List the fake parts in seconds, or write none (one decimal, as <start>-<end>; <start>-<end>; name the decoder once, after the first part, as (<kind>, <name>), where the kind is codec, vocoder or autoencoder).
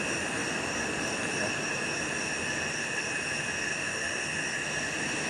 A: 3.7-4.2 (autoencoder, DAC-VAE)